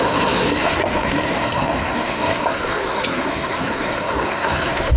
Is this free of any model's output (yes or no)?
no